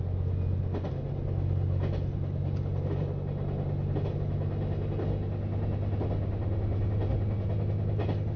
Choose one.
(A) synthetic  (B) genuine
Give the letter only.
B